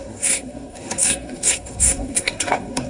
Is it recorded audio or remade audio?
remade